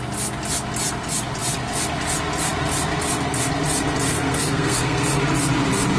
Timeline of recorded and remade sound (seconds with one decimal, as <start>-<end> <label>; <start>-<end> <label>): 0.0-4.1 recorded; 4.1-5.2 remade; 5.2-6.0 recorded